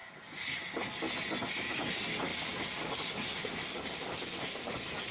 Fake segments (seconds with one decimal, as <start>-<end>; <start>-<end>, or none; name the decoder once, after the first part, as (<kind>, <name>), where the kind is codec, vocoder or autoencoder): none